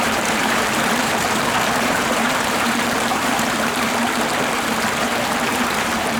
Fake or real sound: fake